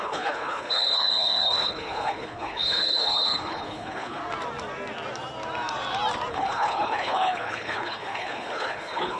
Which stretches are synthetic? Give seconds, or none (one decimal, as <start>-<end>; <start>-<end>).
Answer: 0.0-4.2; 6.3-9.2